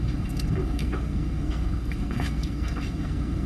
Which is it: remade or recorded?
remade